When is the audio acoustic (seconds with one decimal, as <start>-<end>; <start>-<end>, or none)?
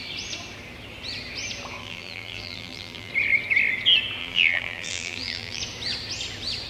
0.0-1.8; 3.1-4.2; 5.6-6.7